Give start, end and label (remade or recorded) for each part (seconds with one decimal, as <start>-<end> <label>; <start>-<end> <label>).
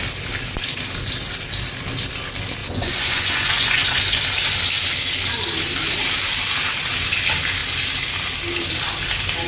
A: 0.0-2.6 recorded; 2.6-4.2 remade; 4.2-9.5 recorded